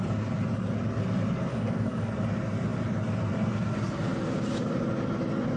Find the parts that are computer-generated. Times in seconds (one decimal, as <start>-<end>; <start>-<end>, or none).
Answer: 1.5-2.1